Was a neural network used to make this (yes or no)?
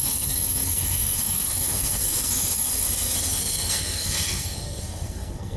yes